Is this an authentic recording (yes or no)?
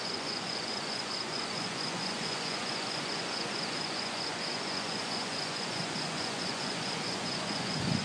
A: no